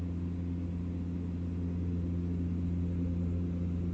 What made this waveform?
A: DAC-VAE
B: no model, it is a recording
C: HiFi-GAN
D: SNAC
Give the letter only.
B